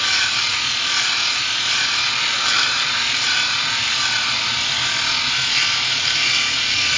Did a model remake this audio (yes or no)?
no